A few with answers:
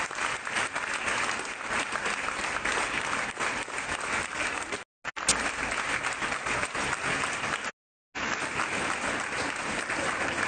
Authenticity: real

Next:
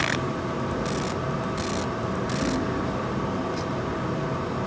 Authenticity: real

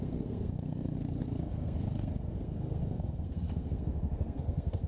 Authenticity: fake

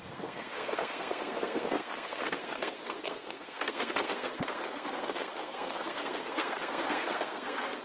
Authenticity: fake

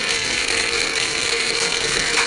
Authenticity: fake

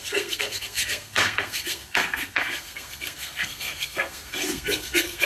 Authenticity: fake